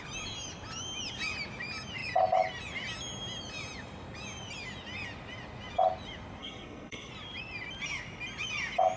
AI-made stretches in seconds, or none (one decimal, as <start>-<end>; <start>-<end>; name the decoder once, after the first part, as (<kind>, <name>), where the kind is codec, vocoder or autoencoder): 6.4-7.1 (codec, SNAC)